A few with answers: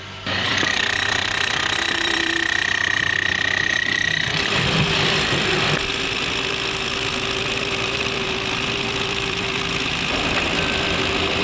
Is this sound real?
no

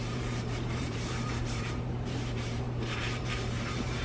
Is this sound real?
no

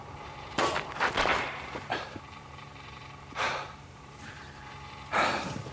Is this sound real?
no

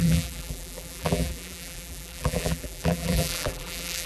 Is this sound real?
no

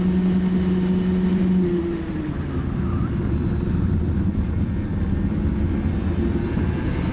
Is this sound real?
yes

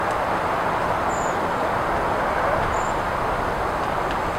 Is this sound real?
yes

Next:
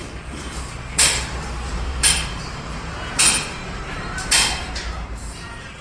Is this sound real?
no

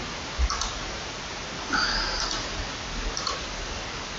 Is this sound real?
yes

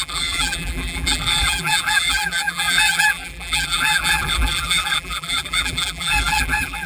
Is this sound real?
no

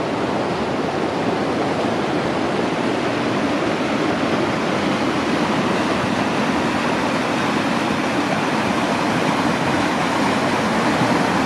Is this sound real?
yes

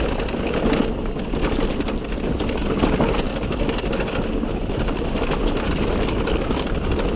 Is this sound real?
yes